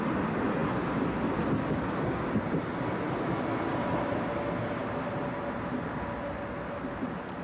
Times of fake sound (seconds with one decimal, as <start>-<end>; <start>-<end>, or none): none